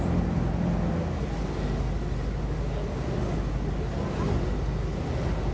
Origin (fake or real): real